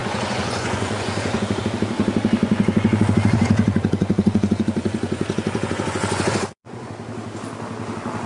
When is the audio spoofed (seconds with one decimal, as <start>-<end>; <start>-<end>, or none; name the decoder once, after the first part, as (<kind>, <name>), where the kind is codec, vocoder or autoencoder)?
0.0-1.6 (vocoder, Vocos); 2.4-6.9